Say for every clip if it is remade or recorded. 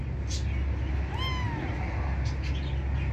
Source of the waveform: recorded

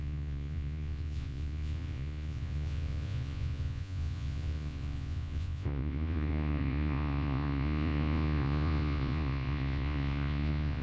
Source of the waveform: remade